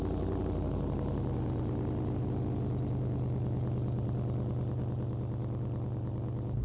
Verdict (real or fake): real